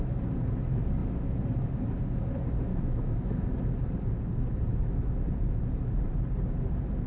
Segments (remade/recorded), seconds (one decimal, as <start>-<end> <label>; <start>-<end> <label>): 0.0-2.7 recorded; 2.7-3.5 remade; 3.5-4.7 recorded; 4.7-5.2 remade; 5.2-7.1 recorded